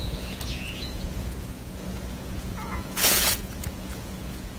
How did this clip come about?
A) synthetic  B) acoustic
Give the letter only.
A